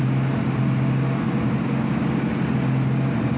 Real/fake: real